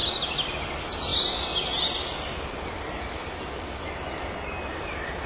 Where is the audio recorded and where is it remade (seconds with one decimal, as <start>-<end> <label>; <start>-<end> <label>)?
0.0-5.3 recorded

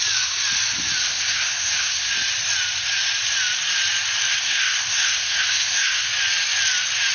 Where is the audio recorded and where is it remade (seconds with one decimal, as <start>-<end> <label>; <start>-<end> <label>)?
0.0-1.0 recorded; 1.0-2.1 remade; 2.1-4.3 recorded; 4.3-6.1 remade; 6.1-7.1 recorded

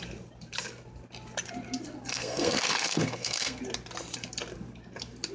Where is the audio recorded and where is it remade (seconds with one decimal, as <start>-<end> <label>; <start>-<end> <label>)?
0.0-2.1 recorded; 2.1-3.6 remade; 3.6-5.3 recorded

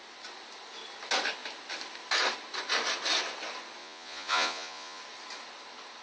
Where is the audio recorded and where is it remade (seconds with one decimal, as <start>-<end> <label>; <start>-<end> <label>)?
0.0-3.8 recorded; 3.8-5.0 remade; 5.0-6.0 recorded

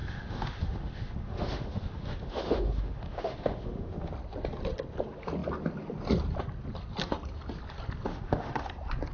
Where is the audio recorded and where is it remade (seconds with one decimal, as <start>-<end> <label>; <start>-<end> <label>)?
0.0-4.1 remade; 4.1-8.1 recorded; 8.1-8.7 remade; 8.7-9.1 recorded

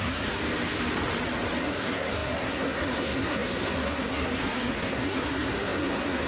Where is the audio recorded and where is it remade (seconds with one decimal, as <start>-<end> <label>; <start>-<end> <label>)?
0.0-0.4 remade; 0.4-1.6 recorded; 1.6-6.3 remade

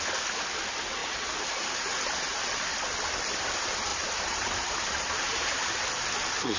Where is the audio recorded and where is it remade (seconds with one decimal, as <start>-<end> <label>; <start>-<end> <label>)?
0.0-1.0 recorded; 1.0-1.7 remade; 1.7-3.9 recorded; 3.9-5.8 remade; 5.8-6.6 recorded